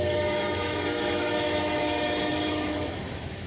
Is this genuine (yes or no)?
no